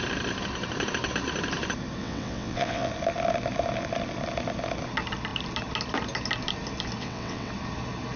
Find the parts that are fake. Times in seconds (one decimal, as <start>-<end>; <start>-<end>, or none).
2.0-2.9; 7.0-7.5

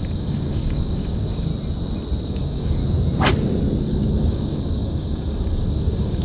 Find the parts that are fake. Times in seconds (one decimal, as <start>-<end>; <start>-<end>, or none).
0.0-1.5; 2.2-2.8; 3.8-6.2

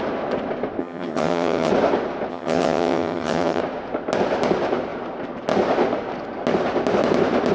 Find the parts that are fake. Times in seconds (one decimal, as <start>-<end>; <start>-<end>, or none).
0.8-1.7; 2.3-3.6